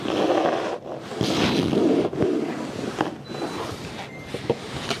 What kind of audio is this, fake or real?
real